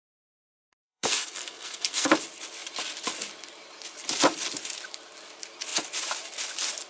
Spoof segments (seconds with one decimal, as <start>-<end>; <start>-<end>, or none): 0.4-2.1